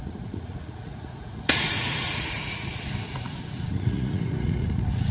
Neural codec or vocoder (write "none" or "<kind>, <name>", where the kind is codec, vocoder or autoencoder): vocoder, Vocos